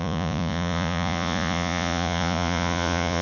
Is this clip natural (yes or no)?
no